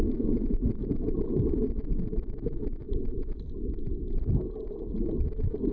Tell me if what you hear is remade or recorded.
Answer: recorded